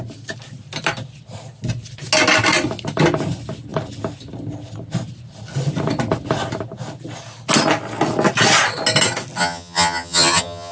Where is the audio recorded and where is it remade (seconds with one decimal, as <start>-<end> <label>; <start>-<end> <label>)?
0.0-9.4 recorded; 9.4-10.7 remade